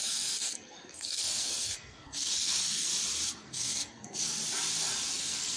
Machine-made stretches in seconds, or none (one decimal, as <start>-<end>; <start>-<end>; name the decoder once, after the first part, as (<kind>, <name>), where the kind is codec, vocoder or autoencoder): 0.0-2.9 (codec, SNAC); 3.4-4.4; 5.1-5.6